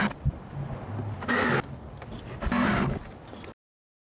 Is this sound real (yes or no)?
yes